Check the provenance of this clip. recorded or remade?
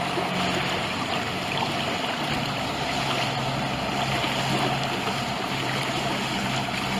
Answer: recorded